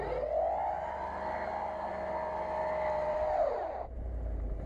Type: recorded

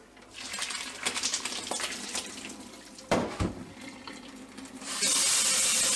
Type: remade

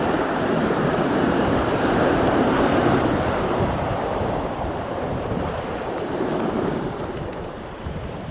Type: remade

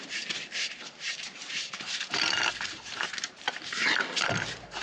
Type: remade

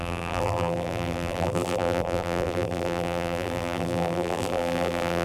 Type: remade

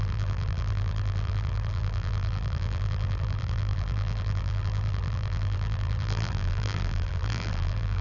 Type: remade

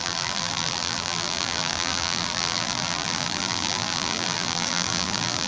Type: remade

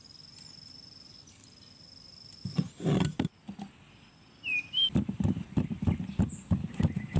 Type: recorded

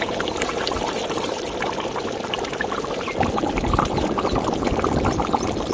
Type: remade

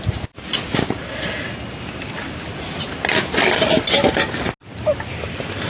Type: recorded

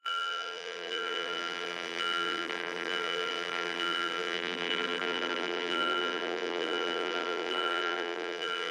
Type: remade